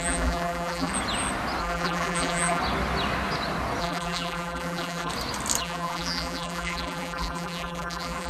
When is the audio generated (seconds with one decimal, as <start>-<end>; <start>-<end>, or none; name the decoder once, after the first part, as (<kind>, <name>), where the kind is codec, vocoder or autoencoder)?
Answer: 0.0-0.9 (vocoder, BigVGAN v2); 1.6-2.6; 3.8-5.1; 5.6-8.3